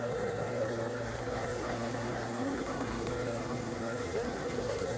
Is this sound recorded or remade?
remade